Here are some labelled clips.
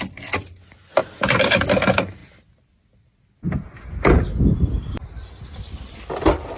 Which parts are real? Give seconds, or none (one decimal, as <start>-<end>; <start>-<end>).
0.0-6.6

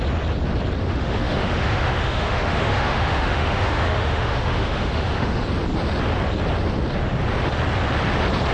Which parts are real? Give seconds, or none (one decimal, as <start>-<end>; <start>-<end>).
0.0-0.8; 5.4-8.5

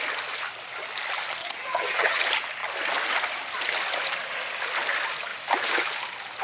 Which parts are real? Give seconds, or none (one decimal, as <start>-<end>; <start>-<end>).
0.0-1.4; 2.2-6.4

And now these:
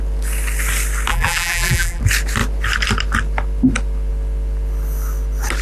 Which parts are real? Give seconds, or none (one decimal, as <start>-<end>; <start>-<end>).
0.0-1.1; 2.0-5.6